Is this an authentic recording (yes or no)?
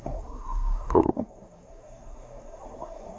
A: no